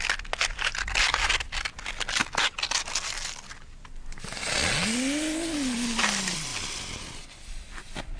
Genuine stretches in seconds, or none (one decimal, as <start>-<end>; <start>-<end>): 0.0-8.2